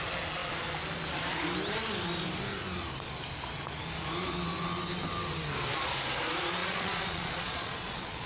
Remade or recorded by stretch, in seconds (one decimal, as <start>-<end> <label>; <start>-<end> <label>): 0.0-6.6 recorded; 6.6-8.3 remade